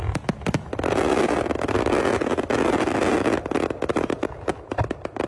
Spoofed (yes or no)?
no